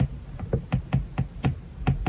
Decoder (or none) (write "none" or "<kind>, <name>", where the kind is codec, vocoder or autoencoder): none